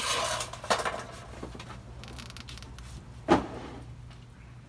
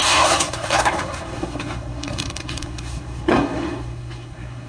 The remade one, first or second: second